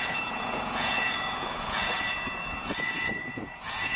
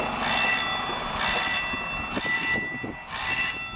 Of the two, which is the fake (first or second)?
first